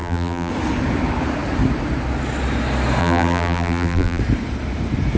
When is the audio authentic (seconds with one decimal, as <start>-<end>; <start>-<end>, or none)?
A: 0.5-3.0; 4.2-5.2